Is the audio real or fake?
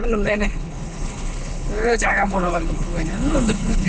fake